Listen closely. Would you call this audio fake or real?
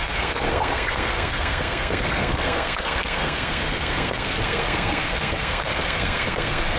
fake